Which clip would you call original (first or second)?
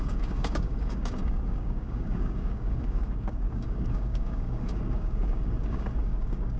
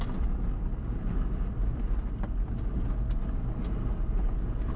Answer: second